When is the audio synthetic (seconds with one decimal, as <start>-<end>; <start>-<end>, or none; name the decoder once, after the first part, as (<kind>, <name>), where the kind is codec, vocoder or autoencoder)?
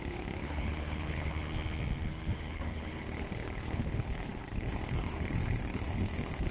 0.0-1.3 (codec, HILCodec); 2.1-6.5